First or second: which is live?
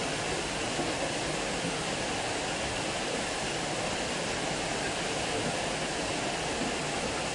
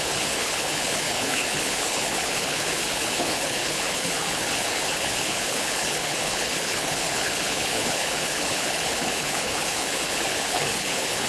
first